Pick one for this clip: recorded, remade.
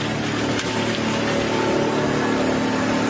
recorded